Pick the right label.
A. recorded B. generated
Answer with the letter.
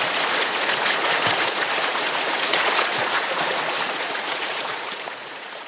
B